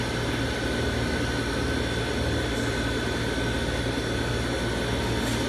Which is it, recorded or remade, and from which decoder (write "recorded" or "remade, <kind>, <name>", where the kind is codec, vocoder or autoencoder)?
recorded